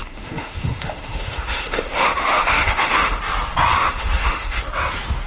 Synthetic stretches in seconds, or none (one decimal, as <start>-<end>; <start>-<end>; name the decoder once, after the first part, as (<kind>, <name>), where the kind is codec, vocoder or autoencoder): 0.0-3.2 (autoencoder, DAC-VAE); 3.7-4.6